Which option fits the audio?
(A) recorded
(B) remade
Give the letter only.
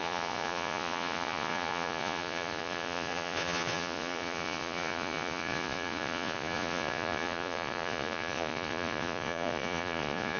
B